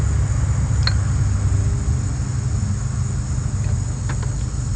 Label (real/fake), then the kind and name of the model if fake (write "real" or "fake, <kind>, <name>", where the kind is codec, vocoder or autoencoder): real